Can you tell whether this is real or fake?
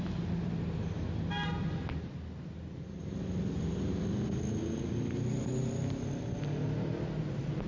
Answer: real